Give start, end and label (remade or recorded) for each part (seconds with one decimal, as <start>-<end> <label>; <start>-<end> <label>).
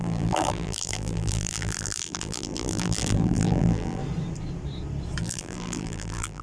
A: 0.0-4.0 remade; 4.0-5.2 recorded; 5.2-6.4 remade